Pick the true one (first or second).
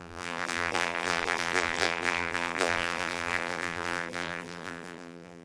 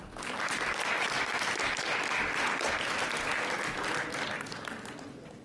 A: second